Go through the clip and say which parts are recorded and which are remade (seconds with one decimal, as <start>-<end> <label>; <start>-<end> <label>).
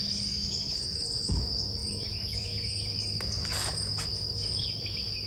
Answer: 0.0-5.3 remade